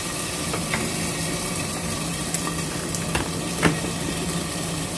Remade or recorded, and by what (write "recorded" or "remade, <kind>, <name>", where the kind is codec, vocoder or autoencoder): remade, vocoder, BigVGAN v2